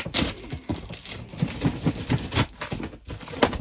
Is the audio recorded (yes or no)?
yes